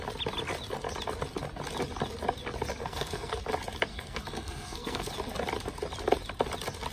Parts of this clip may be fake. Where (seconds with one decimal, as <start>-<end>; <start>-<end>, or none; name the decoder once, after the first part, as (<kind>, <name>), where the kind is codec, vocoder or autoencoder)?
2.8-3.4 (codec, SNAC); 3.9-5.1